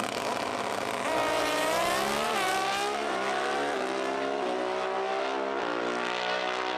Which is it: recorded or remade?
recorded